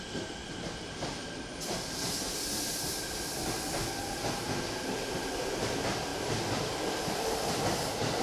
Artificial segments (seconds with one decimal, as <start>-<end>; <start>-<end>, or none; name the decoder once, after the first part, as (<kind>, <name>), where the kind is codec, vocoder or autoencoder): none